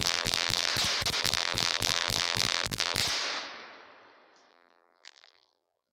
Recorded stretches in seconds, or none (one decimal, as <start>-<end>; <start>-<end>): 0.7-1.2; 3.0-4.5